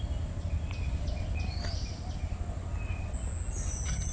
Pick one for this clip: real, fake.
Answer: real